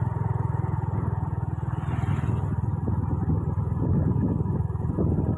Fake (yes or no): no